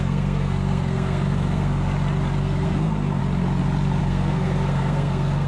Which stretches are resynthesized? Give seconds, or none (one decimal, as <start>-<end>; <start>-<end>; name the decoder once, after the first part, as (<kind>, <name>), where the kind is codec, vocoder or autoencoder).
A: 0.0-1.9 (codec, SNAC); 2.4-3.2; 4.0-5.5